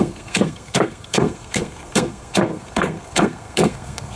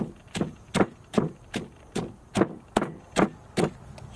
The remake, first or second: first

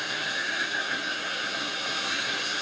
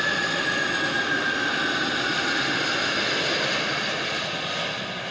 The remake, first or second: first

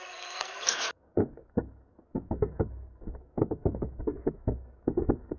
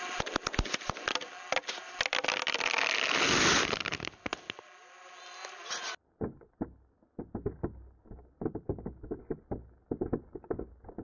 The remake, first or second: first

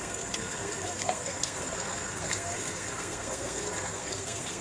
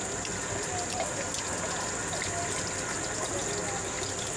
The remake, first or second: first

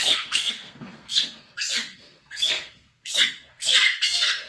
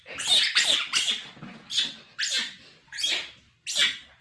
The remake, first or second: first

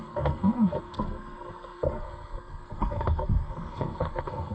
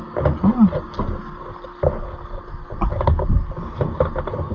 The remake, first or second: first